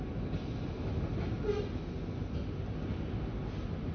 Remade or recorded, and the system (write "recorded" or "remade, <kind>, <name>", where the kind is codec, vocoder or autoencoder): recorded